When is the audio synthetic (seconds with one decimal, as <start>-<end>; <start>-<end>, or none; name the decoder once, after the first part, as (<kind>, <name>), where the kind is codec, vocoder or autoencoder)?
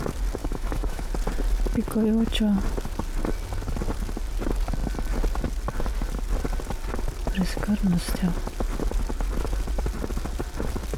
0.4-1.1 (autoencoder, DAC-VAE)